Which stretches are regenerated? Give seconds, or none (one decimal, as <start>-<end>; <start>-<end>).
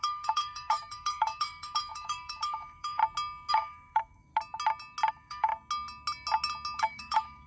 0.0-3.0; 3.5-4.3; 5.1-5.5; 6.8-7.5